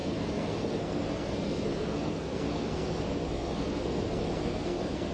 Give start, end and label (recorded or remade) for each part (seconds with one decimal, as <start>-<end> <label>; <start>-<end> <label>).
0.0-5.1 remade